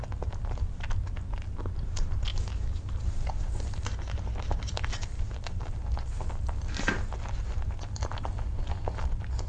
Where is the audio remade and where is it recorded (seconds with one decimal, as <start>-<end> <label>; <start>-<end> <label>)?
0.0-2.3 recorded; 2.3-2.9 remade; 2.9-9.5 recorded